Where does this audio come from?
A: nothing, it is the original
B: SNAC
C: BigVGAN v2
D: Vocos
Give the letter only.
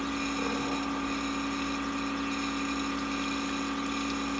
A